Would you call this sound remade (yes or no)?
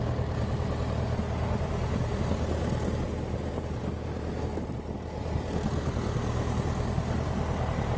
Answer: no